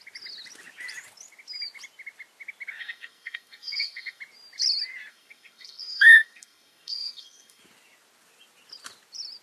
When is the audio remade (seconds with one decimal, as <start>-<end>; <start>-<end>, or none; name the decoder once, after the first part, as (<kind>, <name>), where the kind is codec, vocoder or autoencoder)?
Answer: 2.8-4.2 (codec, SNAC); 5.1-7.6